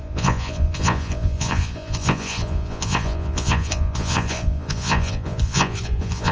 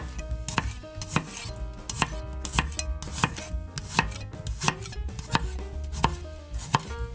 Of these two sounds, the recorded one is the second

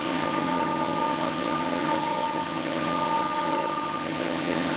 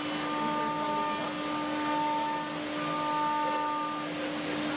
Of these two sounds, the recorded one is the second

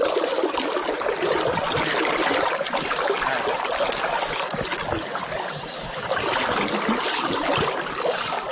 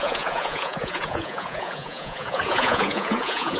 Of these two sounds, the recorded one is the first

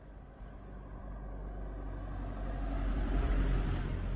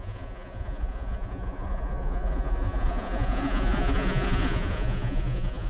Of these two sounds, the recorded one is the first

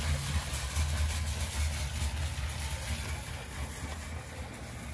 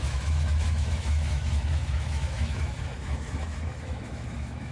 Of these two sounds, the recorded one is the first